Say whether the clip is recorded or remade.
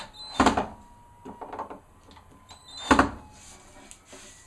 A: recorded